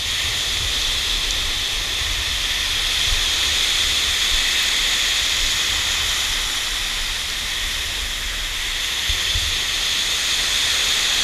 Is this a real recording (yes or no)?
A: yes